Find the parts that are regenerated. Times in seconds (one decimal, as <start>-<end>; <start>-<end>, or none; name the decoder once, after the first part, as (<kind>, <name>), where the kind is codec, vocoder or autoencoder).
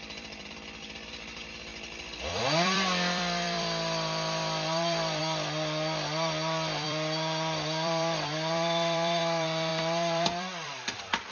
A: 0.0-11.3 (vocoder, BigVGAN v2)